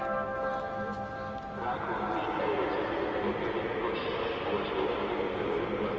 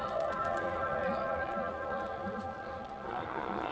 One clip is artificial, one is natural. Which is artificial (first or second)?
second